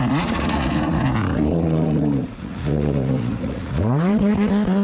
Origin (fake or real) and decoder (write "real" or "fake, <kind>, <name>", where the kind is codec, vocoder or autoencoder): fake, vocoder, Vocos